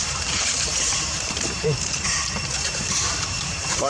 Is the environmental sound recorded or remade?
remade